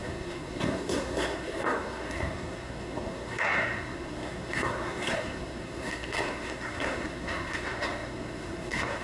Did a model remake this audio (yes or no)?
yes